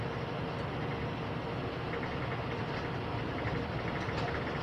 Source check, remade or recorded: recorded